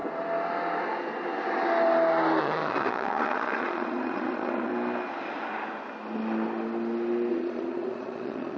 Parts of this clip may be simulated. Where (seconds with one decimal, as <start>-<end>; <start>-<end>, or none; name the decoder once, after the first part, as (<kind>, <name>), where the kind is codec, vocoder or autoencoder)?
2.4-4.7 (vocoder, Vocos); 7.3-8.6